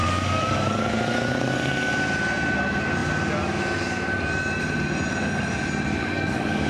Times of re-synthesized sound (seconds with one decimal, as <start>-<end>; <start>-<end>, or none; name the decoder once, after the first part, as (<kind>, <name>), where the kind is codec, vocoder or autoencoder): 0.0-0.8 (codec, DAC); 6.0-6.7